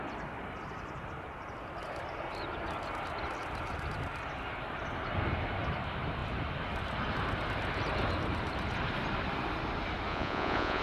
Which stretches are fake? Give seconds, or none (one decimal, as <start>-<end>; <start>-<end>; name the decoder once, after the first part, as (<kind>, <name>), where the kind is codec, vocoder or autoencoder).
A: 10.1-10.8 (vocoder, Vocos)